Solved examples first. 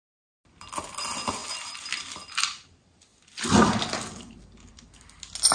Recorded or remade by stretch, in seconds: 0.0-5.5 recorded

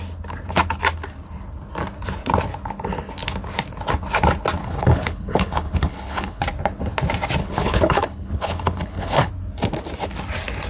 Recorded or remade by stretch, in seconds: 0.0-4.6 recorded; 4.6-6.4 remade; 6.4-7.4 recorded; 7.4-9.3 remade; 9.3-10.7 recorded

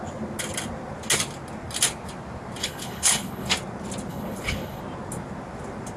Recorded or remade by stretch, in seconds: 0.0-2.6 recorded; 2.6-3.5 remade; 3.5-4.1 recorded; 4.1-4.8 remade; 4.8-6.0 recorded

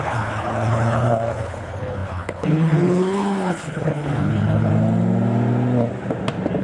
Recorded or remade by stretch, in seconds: 0.0-4.7 remade; 4.7-6.6 recorded

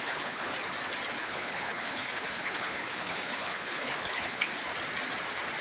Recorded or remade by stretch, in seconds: 0.0-0.5 remade; 0.5-1.1 recorded; 1.1-4.5 remade; 4.5-5.6 recorded